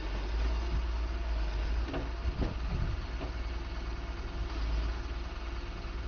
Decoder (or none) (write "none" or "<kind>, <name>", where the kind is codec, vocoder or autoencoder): none